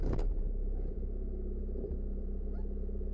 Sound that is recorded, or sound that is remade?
remade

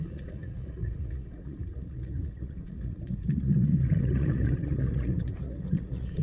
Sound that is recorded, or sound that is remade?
remade